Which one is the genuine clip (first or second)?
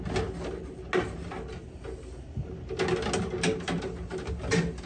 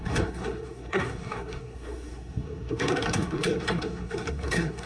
first